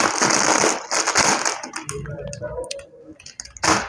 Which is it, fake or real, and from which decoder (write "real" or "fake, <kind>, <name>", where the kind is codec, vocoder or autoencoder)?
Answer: real